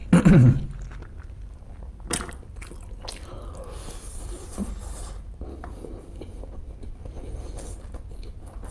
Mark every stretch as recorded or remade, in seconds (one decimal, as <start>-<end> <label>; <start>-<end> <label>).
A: 0.0-4.7 remade; 4.7-8.7 recorded